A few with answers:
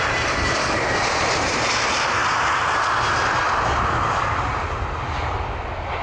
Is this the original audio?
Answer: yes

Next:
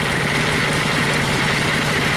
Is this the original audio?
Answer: yes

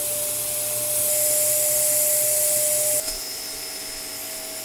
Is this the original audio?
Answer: yes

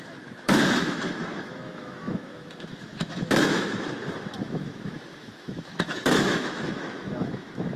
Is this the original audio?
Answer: no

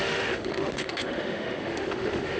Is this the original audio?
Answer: no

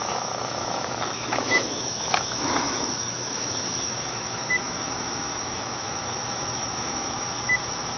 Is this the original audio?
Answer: no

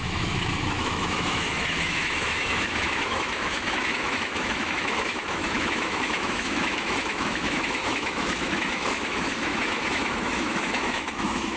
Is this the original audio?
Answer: no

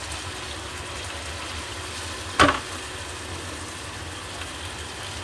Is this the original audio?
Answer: yes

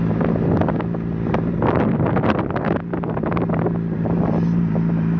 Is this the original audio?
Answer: yes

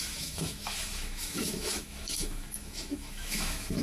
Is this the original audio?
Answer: no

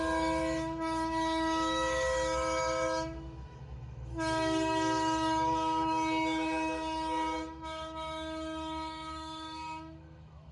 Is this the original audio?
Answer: no